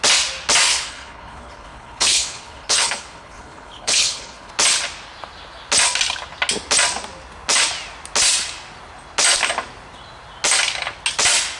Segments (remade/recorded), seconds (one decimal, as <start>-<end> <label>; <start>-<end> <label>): 0.0-0.7 recorded; 0.7-4.5 remade; 4.5-11.6 recorded